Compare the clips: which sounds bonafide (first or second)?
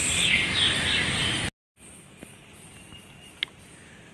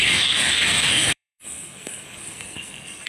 first